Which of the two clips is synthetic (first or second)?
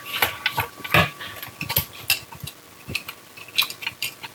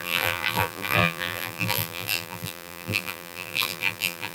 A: second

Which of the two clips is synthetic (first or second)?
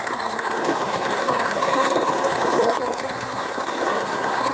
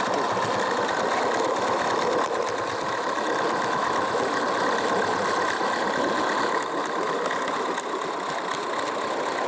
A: first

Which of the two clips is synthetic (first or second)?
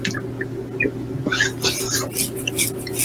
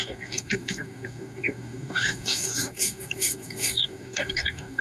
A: second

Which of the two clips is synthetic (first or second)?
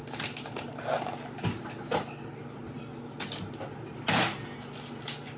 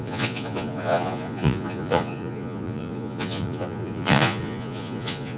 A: second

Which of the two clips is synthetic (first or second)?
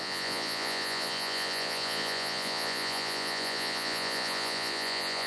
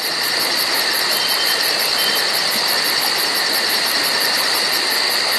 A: first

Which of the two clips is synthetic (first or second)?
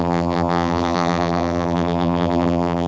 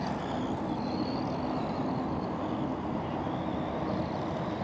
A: first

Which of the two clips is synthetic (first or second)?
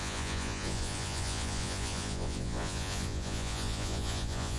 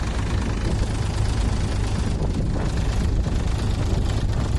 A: first